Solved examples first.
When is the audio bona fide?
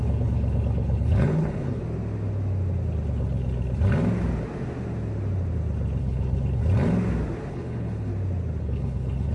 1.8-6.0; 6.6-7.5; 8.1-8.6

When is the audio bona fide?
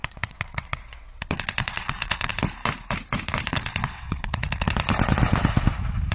2.3-3.5; 4.7-6.1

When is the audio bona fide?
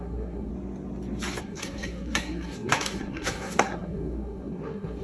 0.5-1.4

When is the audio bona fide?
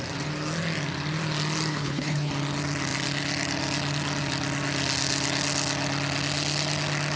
0.0-1.7; 2.3-7.2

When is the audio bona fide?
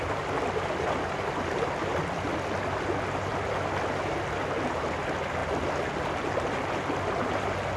0.0-7.8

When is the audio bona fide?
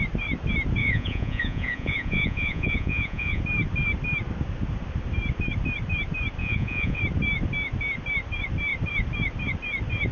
0.0-0.8; 3.4-6.4; 7.0-10.1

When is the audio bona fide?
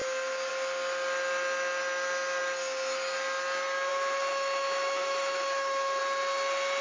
0.0-4.3; 6.0-6.8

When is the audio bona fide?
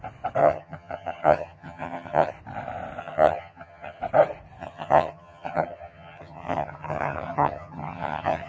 0.0-0.4; 2.3-3.0; 4.0-4.6